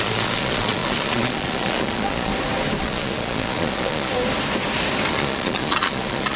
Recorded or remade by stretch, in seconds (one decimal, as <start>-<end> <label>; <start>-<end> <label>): 0.0-2.3 remade; 2.3-2.8 recorded; 2.8-4.1 remade; 4.1-5.1 recorded; 5.1-6.4 remade